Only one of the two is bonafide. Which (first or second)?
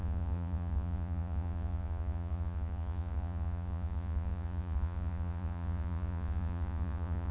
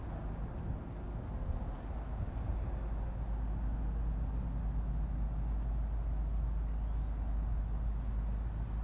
second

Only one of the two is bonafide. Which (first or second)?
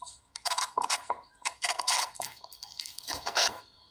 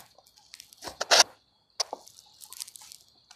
second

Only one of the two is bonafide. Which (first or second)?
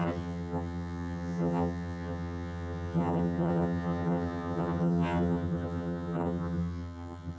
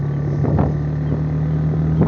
second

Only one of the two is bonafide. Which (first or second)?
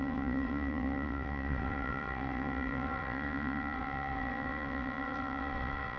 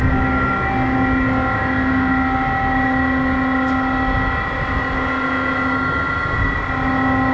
second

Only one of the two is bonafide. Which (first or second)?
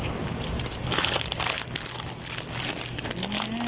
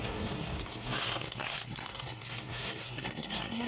first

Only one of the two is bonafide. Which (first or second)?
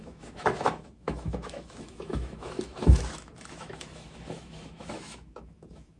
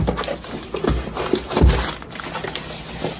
second